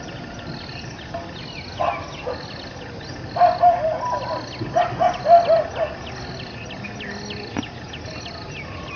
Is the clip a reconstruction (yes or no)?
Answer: no